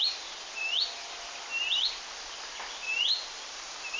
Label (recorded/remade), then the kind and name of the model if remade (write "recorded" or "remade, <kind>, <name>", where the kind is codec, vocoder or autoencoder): recorded